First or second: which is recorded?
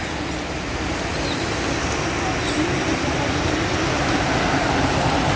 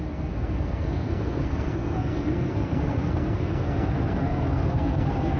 first